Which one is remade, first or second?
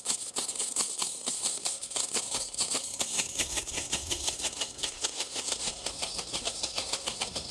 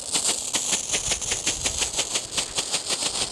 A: first